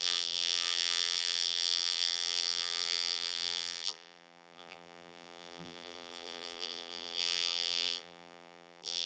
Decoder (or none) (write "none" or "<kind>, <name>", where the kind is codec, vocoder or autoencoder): vocoder, BigVGAN v2